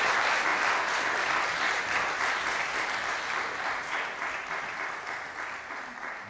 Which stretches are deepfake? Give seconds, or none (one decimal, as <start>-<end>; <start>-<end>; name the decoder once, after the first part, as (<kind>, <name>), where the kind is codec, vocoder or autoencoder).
3.0-3.8 (vocoder, BigVGAN v2)